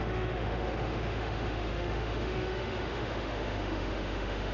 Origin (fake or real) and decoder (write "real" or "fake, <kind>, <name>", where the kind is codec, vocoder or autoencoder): fake, autoencoder, DAC-VAE